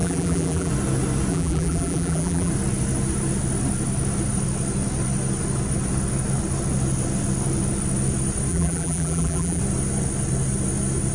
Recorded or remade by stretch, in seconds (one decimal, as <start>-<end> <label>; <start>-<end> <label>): 0.0-0.7 remade; 0.7-1.3 recorded; 1.3-2.5 remade; 2.5-8.5 recorded; 8.5-9.6 remade; 9.6-11.1 recorded